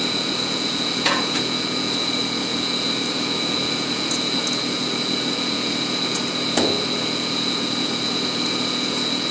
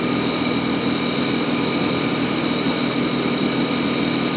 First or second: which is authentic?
second